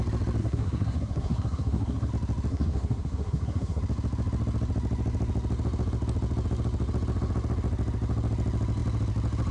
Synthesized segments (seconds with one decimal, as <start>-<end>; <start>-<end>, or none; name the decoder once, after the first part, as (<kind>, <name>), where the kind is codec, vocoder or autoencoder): 0.4-2.1 (codec, SNAC); 2.5-3.8